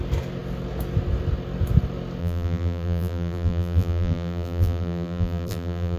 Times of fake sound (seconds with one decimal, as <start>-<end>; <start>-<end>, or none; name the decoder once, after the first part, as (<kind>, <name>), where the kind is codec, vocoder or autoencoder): 2.2-6.0 (vocoder, BigVGAN v2)